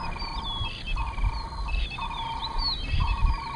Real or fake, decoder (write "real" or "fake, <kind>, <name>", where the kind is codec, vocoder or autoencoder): real